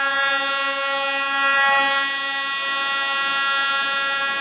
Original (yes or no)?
yes